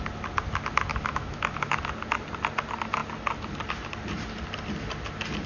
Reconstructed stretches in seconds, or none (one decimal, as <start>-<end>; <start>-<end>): 0.9-1.8